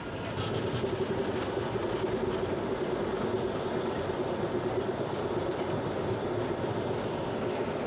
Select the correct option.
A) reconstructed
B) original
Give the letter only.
B